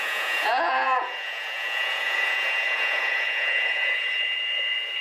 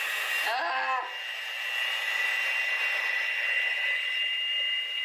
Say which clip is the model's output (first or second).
first